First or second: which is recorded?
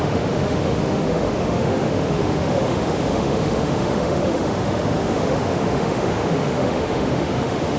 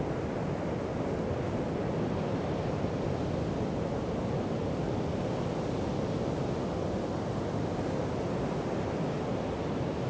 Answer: second